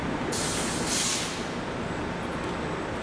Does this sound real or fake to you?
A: real